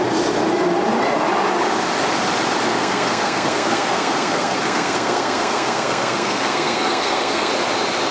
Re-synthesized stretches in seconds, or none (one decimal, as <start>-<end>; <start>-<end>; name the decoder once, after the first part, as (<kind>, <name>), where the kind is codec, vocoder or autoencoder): 2.7-7.5 (codec, SNAC)